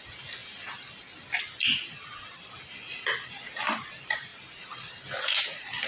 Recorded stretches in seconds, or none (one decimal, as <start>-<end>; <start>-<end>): 0.0-5.9